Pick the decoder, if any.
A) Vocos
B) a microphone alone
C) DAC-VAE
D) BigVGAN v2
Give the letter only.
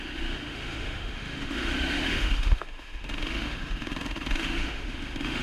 C